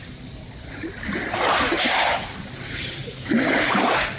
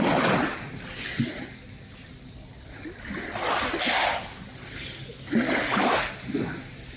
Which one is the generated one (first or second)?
first